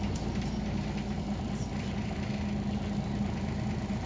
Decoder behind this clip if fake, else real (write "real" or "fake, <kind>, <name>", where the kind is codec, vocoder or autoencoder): real